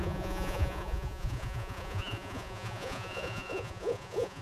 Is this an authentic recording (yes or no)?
no